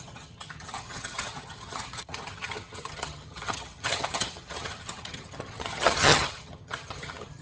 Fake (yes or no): yes